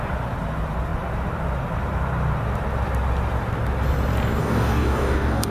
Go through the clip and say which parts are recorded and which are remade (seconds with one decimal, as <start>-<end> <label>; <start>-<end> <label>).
0.0-4.4 recorded; 4.4-5.5 remade